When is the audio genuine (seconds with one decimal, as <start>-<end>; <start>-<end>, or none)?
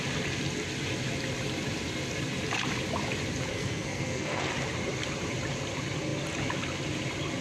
0.0-3.5; 4.5-7.4